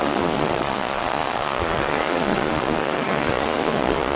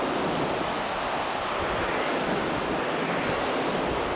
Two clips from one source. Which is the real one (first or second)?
second